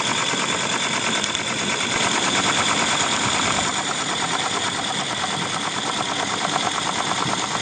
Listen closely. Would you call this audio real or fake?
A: real